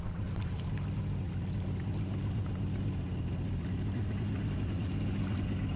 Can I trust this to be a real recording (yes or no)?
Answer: yes